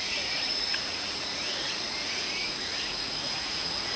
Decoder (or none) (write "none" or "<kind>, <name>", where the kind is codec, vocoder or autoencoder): vocoder, Vocos